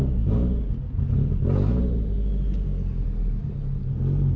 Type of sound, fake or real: real